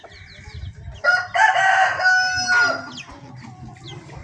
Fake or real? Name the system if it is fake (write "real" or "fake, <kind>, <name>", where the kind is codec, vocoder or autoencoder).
real